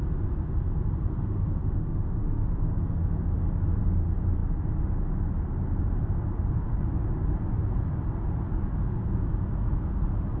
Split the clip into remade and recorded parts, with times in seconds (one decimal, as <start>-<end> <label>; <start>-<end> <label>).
0.0-1.1 recorded; 1.1-2.6 remade; 2.6-10.4 recorded